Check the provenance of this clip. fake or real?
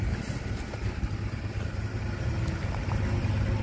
real